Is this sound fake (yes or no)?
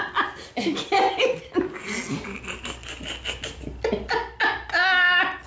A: no